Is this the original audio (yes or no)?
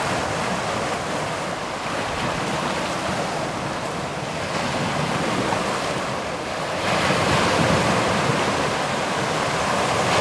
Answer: yes